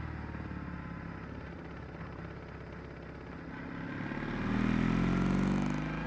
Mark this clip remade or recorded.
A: recorded